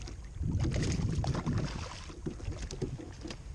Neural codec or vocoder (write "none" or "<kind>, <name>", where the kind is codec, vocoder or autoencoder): none